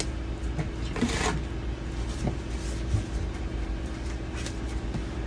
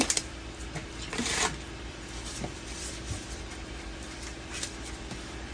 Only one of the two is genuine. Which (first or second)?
first